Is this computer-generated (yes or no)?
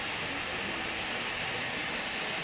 no